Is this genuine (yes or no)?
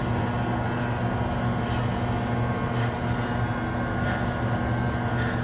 yes